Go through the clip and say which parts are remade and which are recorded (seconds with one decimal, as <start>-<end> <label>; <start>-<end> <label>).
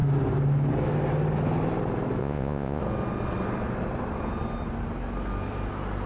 0.0-2.2 recorded; 2.2-2.8 remade; 2.8-6.1 recorded